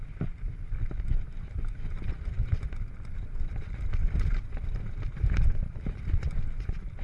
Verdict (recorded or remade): recorded